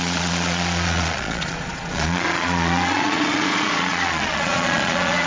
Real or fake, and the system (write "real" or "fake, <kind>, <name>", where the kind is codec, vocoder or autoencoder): fake, vocoder, Vocos